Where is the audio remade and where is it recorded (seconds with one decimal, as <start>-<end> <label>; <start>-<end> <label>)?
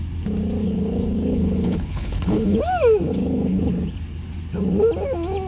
0.0-0.6 recorded; 0.6-2.6 remade; 2.6-3.1 recorded; 3.1-3.7 remade; 3.7-5.5 recorded